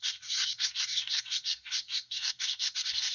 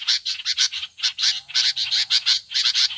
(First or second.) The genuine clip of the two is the second